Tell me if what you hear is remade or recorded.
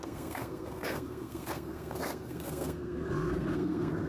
remade